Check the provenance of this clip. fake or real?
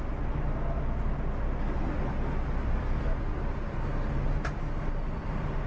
real